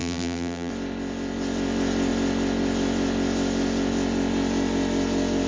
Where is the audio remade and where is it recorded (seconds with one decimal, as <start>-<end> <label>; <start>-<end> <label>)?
0.0-0.7 remade; 0.7-5.5 recorded